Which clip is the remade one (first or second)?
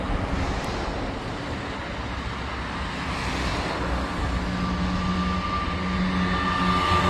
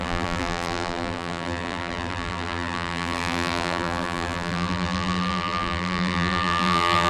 second